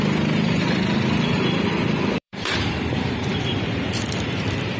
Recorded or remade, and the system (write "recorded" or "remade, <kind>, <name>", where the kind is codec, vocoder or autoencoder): remade, vocoder, BigVGAN v2